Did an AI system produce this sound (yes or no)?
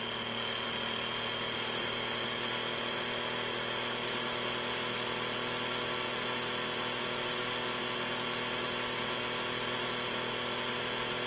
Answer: no